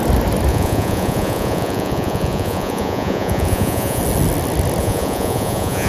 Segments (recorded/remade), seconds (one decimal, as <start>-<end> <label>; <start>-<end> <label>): 0.0-0.5 recorded; 0.5-4.0 remade; 4.0-4.8 recorded; 4.8-5.9 remade